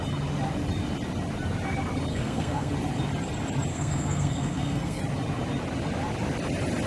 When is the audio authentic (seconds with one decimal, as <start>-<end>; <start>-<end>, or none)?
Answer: 0.0-2.1; 2.7-3.7; 5.0-6.9

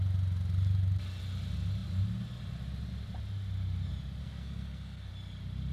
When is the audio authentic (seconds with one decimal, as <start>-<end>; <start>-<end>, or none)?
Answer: 0.0-4.2; 5.1-5.7

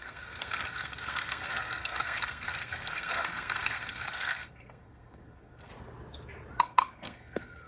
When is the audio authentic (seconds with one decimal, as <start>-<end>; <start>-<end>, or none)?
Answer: 5.7-6.6

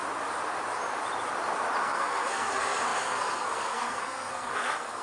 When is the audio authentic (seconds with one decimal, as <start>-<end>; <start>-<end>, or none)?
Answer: 0.0-1.8

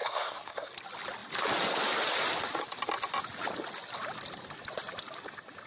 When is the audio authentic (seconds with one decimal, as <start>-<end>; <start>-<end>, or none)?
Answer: 0.7-5.7